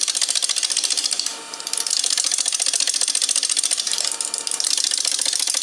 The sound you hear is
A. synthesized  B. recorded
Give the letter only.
B